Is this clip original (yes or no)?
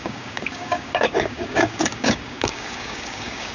no